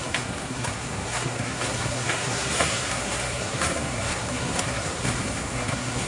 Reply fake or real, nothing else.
fake